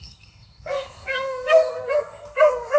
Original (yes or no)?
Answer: no